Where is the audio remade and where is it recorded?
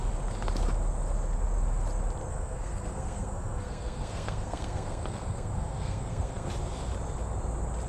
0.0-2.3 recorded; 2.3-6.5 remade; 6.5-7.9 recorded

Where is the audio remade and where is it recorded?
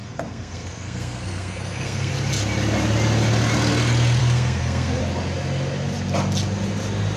0.0-2.1 remade; 2.1-4.2 recorded; 4.2-5.0 remade; 5.0-7.2 recorded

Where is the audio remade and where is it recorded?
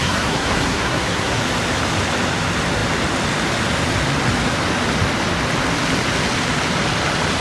0.0-1.4 remade; 1.4-7.4 recorded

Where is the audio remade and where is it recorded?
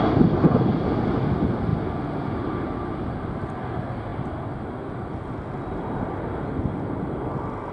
0.0-7.7 recorded